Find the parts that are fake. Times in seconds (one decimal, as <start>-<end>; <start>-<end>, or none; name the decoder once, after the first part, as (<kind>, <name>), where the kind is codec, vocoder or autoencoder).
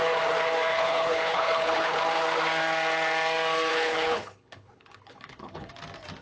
0.7-2.0 (codec, HILCodec); 3.7-5.7